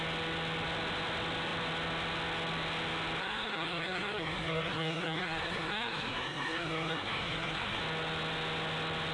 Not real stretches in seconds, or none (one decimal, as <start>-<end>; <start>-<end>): 3.2-7.8